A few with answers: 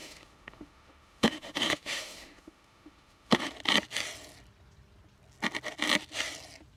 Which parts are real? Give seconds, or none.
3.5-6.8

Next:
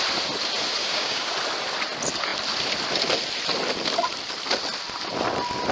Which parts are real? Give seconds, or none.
0.0-0.8; 1.3-5.7

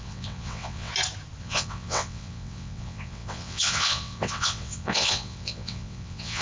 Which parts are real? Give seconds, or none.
0.9-1.4